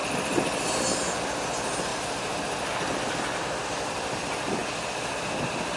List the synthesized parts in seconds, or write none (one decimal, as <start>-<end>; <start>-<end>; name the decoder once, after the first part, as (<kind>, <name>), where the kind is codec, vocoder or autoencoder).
none